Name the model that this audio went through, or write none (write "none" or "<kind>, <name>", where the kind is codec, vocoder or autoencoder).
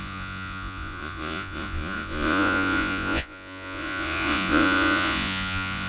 vocoder, Vocos